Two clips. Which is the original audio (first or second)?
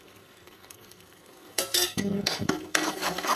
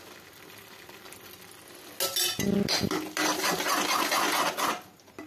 second